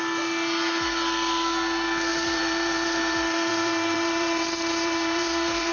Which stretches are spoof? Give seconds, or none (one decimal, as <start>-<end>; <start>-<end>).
2.1-5.7